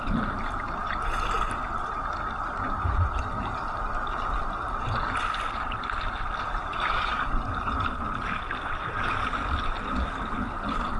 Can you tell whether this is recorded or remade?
recorded